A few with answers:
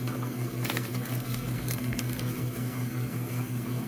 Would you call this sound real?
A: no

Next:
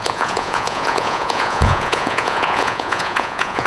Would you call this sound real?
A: no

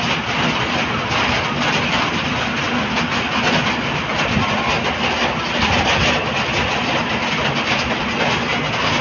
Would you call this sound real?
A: yes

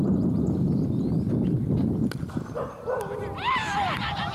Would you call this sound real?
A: no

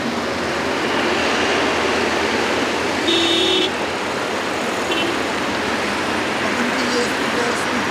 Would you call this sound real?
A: yes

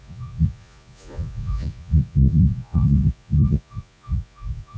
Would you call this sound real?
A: no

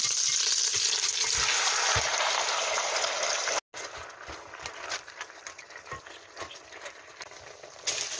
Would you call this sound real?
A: yes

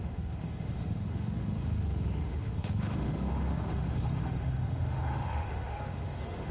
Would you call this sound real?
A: no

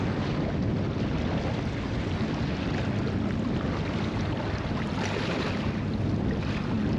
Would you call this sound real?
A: yes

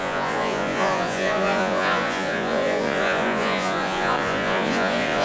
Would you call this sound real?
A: no